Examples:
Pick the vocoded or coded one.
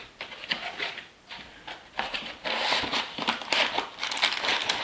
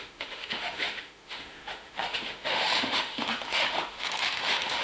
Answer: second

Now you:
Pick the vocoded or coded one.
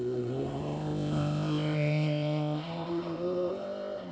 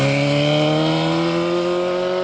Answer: first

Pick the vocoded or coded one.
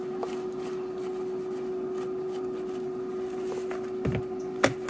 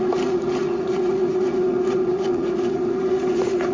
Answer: second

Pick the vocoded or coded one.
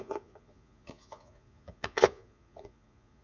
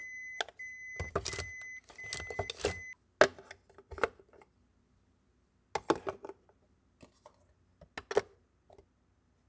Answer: first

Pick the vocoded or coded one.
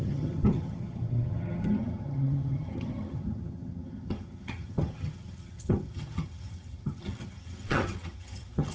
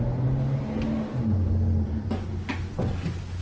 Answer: first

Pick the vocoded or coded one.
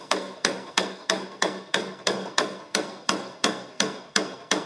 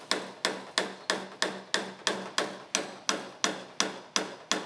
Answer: first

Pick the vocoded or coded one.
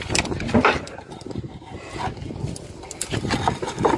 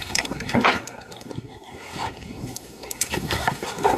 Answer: second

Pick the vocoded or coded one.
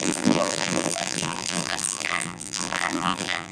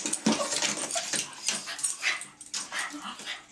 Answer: first